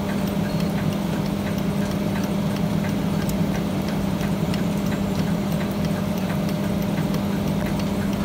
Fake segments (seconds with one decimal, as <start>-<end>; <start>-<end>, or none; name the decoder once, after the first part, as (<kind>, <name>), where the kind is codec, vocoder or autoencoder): 3.4-6.4 (vocoder, BigVGAN v2)